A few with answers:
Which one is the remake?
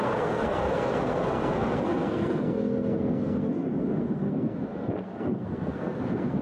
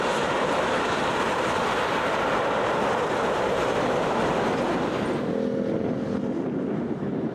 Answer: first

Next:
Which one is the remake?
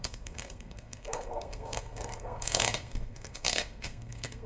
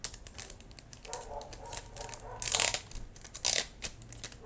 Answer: first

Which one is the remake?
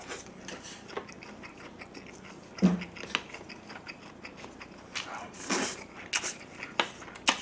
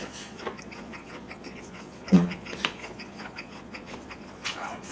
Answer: second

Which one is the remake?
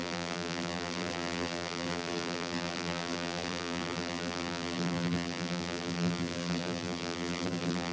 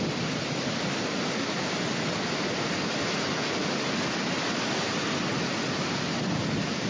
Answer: first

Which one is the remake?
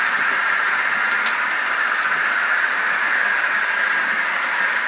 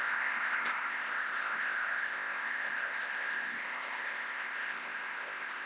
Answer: second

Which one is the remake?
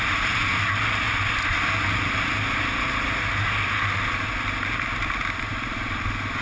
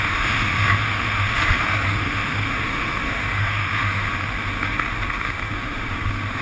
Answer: second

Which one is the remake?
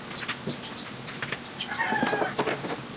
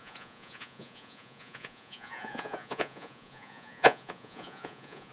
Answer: second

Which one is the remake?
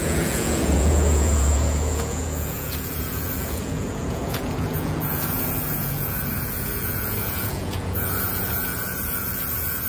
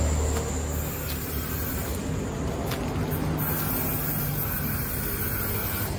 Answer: first